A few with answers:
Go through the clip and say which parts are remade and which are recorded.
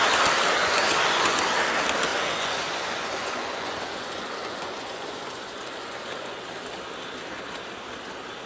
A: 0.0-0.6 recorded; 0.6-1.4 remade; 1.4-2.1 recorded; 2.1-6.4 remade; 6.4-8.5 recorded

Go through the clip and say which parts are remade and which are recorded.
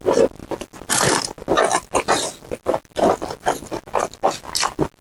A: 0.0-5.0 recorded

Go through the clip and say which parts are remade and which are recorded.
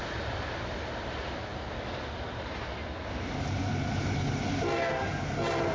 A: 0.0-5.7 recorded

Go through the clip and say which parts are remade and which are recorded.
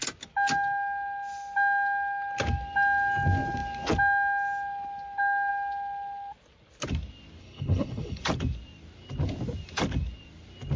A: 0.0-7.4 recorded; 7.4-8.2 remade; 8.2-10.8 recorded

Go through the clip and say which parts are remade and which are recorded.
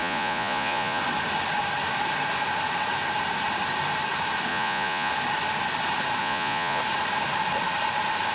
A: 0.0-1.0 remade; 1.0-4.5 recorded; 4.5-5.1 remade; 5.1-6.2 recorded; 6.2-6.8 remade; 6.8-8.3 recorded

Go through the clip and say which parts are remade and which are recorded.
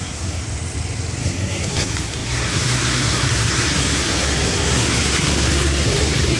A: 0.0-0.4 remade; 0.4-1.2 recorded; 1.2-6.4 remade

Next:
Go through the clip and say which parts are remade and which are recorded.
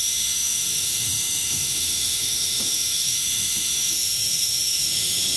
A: 0.0-5.4 remade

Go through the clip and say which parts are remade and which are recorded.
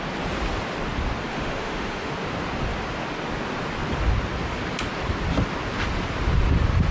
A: 0.0-1.3 recorded; 1.3-2.1 remade; 2.1-6.9 recorded